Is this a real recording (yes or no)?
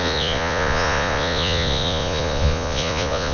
no